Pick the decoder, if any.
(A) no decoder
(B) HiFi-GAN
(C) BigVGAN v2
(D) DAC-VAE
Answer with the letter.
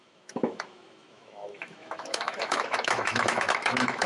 D